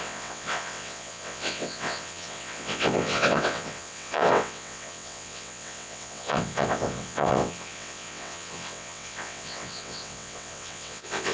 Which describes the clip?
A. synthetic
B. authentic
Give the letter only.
A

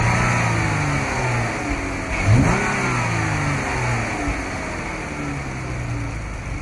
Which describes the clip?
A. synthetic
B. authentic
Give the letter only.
B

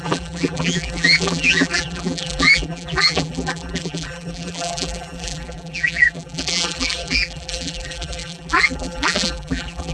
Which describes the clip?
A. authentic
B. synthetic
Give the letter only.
B